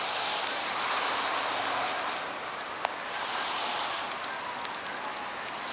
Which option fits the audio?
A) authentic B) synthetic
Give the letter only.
A